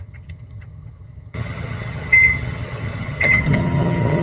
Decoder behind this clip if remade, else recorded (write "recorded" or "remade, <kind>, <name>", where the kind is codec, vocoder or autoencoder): remade, vocoder, HiFi-GAN